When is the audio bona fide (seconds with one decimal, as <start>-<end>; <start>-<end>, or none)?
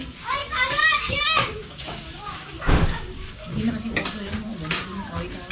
0.0-0.4; 3.7-5.5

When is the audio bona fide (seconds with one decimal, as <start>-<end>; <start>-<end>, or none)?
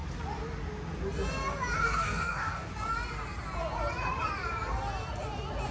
0.0-1.8; 2.7-5.7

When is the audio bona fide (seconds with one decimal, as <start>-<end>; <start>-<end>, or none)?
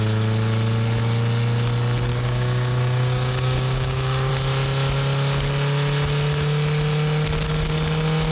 0.0-2.1; 4.3-8.3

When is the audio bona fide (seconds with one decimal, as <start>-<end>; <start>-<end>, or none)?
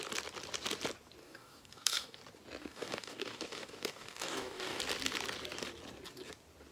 0.0-1.2; 2.2-2.6; 4.8-6.7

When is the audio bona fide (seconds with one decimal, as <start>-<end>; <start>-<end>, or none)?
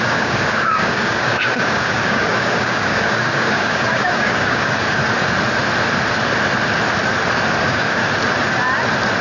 5.0-7.6; 8.0-9.2